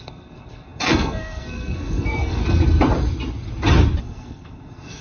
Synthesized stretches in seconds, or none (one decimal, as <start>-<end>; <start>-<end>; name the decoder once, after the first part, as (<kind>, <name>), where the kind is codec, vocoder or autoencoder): 0.0-2.4 (codec, SNAC); 4.0-5.0